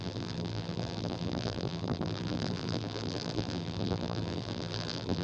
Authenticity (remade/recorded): remade